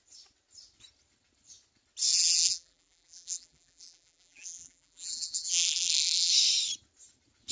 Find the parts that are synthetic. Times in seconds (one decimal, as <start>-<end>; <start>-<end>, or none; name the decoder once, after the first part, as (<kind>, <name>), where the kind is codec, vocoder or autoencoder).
2.1-6.3 (vocoder, BigVGAN v2)